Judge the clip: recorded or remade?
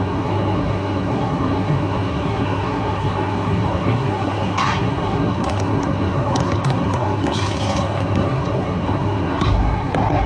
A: remade